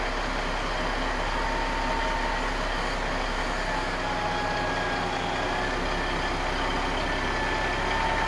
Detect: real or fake real